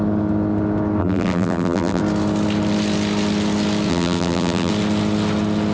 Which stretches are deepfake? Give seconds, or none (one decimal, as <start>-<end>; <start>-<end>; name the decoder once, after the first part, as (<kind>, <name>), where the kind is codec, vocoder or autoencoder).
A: 1.0-2.0 (vocoder, BigVGAN v2); 3.9-4.7